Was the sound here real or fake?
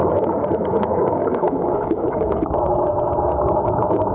fake